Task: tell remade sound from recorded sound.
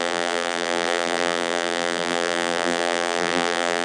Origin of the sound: remade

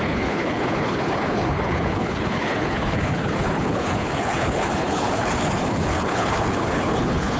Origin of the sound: remade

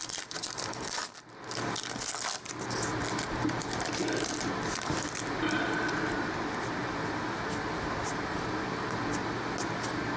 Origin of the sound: recorded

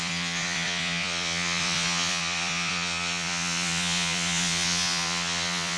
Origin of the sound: remade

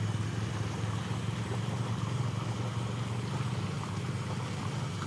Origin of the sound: recorded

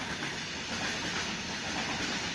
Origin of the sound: recorded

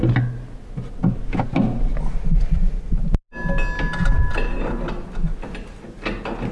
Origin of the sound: recorded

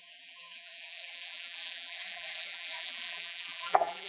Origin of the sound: remade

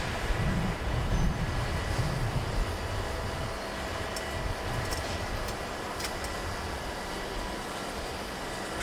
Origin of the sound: recorded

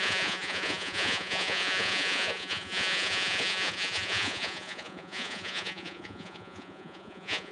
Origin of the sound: remade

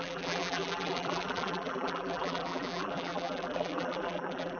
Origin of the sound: remade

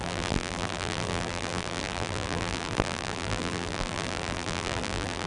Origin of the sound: remade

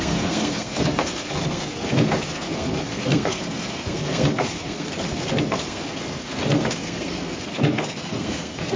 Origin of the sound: remade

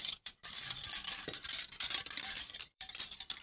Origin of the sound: remade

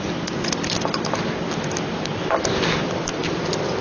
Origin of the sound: recorded